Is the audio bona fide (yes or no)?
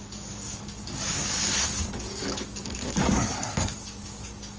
no